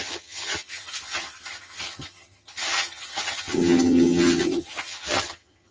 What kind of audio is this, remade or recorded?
remade